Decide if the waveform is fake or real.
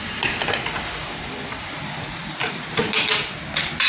fake